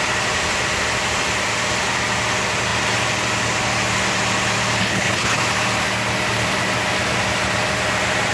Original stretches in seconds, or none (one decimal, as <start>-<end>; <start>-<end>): 0.0-4.8; 5.4-8.3